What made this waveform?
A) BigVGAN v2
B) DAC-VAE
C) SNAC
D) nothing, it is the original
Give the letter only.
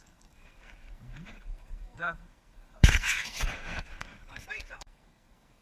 C